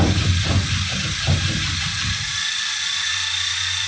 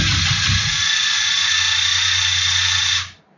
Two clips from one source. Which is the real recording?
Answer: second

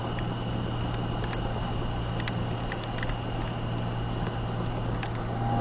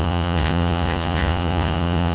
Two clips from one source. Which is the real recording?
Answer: first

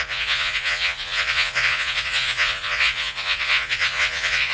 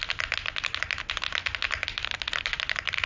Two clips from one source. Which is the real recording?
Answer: second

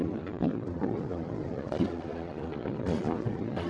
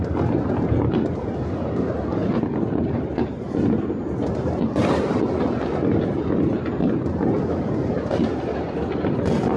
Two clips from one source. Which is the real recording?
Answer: second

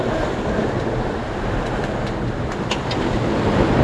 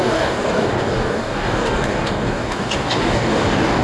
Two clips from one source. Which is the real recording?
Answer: first